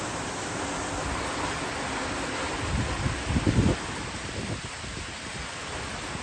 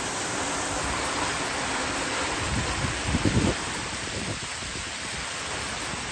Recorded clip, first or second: first